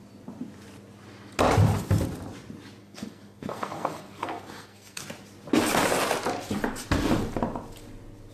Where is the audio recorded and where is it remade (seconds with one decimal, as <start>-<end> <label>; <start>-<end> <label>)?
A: 0.0-2.8 recorded; 2.8-5.0 remade; 5.0-8.3 recorded